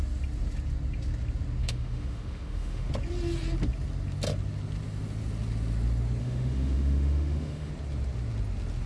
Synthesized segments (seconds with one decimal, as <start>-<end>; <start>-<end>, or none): 1.6-2.9; 6.2-7.7

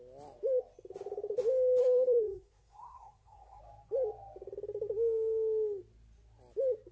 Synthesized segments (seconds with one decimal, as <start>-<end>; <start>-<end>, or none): 1.8-3.6

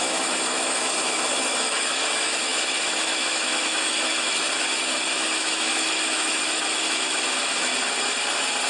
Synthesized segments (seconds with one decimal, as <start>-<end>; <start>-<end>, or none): 0.0-7.7

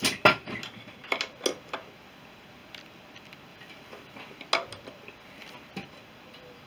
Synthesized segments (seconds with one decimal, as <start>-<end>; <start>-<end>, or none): 3.5-4.2